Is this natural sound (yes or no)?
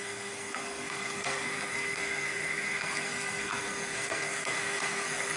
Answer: no